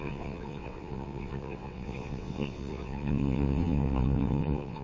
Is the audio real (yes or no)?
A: no